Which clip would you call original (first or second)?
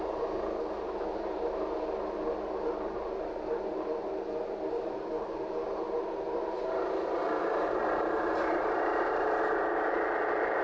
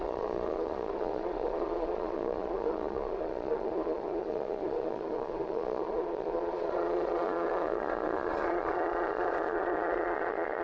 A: first